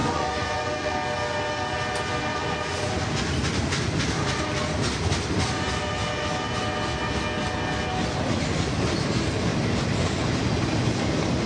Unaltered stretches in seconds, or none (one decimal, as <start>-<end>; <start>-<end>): 0.9-2.3; 2.9-11.5